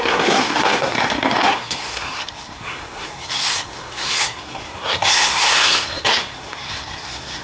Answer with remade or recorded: remade